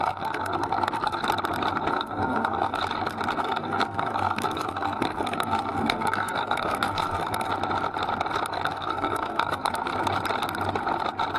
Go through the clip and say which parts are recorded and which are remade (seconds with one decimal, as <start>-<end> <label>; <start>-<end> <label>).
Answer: 0.0-1.2 remade; 1.2-1.9 recorded; 1.9-2.8 remade; 2.8-3.4 recorded; 3.4-7.5 remade; 7.5-8.5 recorded; 8.5-9.9 remade; 9.9-11.4 recorded